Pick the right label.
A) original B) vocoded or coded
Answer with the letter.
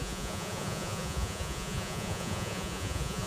B